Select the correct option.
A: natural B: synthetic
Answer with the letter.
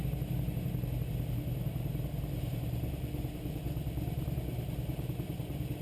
A